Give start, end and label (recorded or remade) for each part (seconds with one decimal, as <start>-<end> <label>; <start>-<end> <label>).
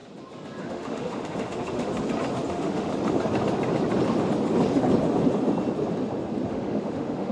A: 0.0-0.6 recorded; 0.6-1.9 remade; 1.9-2.5 recorded; 2.5-2.9 remade; 2.9-6.5 recorded; 6.5-7.3 remade